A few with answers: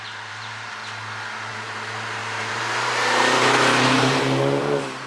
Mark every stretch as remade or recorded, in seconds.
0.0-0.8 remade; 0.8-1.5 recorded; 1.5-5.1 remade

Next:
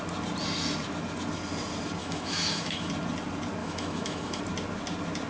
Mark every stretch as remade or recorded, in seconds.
0.0-2.0 recorded; 2.0-2.9 remade; 2.9-3.6 recorded; 3.6-4.4 remade; 4.4-5.3 recorded

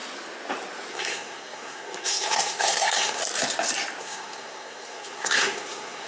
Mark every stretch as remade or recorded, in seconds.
0.0-0.9 recorded; 0.9-3.2 remade; 3.2-4.0 recorded; 4.0-6.1 remade

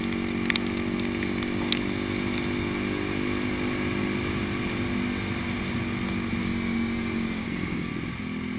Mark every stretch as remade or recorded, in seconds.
0.0-6.4 recorded; 6.4-7.9 remade; 7.9-8.6 recorded

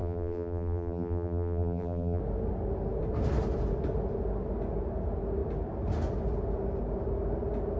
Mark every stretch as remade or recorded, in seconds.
0.0-2.2 remade; 2.2-7.8 recorded